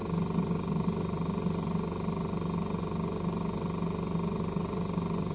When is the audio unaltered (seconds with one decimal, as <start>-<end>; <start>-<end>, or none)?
0.0-5.3